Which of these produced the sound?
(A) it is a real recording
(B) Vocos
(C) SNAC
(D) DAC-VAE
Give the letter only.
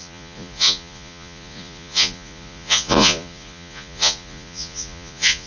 B